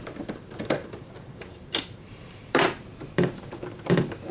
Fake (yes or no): yes